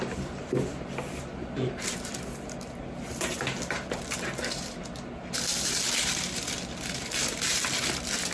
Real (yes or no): yes